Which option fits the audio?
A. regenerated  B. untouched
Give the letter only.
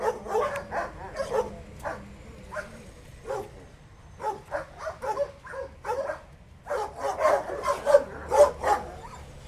B